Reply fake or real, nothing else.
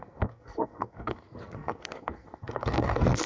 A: fake